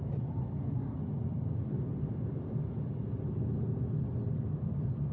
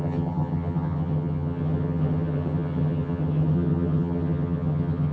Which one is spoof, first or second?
second